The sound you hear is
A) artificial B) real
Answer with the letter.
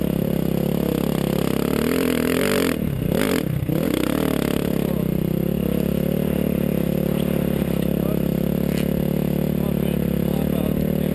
B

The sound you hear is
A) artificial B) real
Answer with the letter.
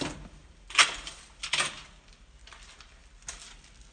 B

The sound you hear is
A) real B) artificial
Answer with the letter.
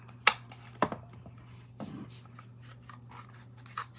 A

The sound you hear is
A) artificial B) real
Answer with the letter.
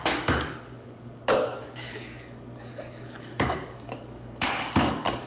A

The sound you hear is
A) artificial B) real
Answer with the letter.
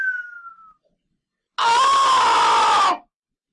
B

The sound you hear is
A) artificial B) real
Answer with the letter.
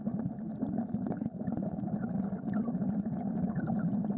B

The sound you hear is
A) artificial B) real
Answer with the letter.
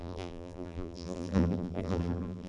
A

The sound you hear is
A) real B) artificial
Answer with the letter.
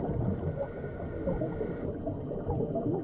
A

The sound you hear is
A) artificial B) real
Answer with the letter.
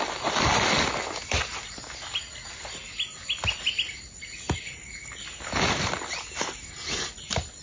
B